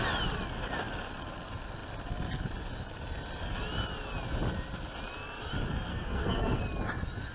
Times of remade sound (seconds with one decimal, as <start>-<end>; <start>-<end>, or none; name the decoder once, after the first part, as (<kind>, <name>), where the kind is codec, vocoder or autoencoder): 5.9-6.6 (codec, SNAC)